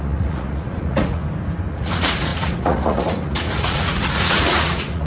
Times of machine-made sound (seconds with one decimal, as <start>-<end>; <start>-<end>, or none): 0.0-1.2; 1.7-5.1